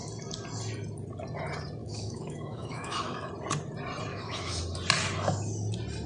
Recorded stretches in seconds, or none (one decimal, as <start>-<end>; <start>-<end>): 0.0-1.8; 3.3-4.1; 4.6-6.1